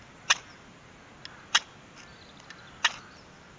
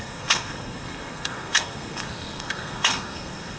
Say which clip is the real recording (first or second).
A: first